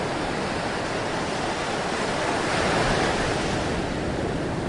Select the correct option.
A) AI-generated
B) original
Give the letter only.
B